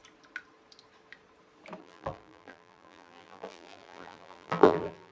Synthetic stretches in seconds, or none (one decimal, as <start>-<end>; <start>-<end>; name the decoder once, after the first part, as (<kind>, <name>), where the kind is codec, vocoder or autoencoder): 1.8-5.1 (vocoder, BigVGAN v2)